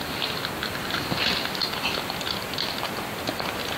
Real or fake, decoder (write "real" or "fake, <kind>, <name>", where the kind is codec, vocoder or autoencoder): real